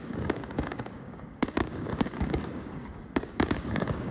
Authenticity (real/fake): fake